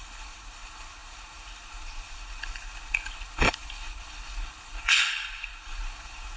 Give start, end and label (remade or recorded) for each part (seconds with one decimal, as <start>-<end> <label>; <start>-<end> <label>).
0.0-6.4 remade

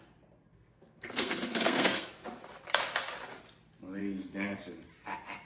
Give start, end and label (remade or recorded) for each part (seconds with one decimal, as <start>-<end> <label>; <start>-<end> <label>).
0.0-0.5 recorded; 0.5-2.1 remade; 2.1-4.0 recorded; 4.0-4.6 remade; 4.6-5.5 recorded